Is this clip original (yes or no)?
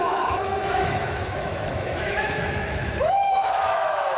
no